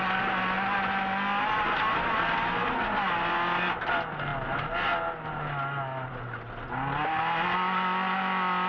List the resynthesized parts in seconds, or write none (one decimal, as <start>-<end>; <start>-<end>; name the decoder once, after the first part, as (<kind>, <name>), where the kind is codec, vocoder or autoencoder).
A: none